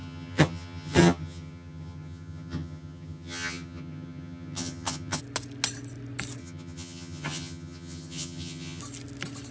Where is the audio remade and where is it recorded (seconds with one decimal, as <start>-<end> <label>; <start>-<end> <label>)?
0.0-5.2 remade; 5.2-6.4 recorded; 6.4-8.8 remade; 8.8-9.5 recorded